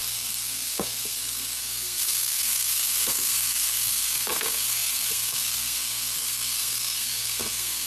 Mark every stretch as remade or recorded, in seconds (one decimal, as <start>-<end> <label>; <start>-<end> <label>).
0.0-7.9 remade